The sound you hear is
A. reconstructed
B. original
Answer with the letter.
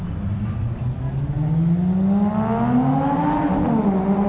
B